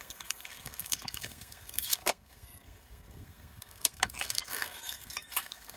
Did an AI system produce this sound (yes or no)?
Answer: yes